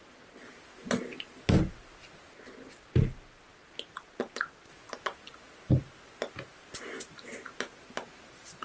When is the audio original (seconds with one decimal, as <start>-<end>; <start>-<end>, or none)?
0.0-8.6